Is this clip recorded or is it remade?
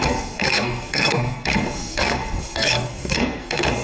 remade